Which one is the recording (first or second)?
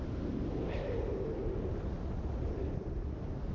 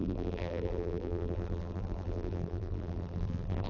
first